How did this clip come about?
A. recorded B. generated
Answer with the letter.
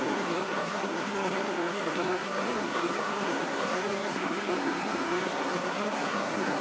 B